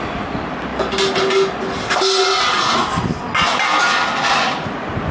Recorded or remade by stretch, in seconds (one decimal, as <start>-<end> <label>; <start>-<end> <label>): 0.0-5.1 recorded